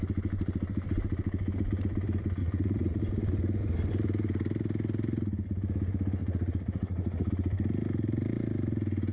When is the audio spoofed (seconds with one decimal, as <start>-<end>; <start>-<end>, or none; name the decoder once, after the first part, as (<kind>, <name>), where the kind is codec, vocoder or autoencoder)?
2.4-3.0 (vocoder, Vocos); 6.2-7.3